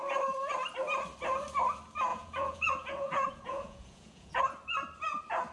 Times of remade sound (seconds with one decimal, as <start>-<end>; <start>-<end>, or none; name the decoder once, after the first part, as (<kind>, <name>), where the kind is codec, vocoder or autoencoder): 2.1-4.4 (vocoder, Vocos)